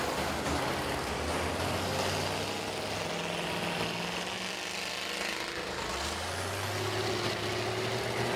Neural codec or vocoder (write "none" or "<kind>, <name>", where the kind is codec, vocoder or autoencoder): none